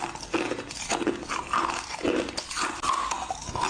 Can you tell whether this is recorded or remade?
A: recorded